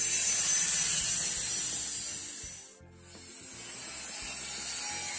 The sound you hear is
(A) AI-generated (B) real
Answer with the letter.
B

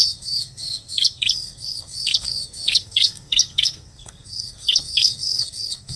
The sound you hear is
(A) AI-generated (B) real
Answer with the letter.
A